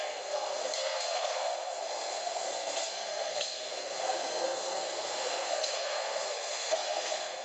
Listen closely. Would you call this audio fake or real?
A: fake